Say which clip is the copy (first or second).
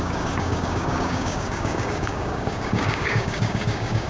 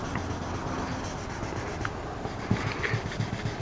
first